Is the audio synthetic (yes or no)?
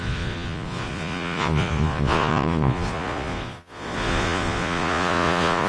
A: yes